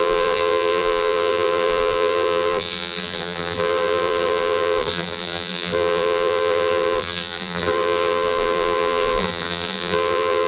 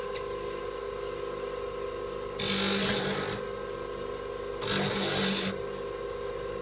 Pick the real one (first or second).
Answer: second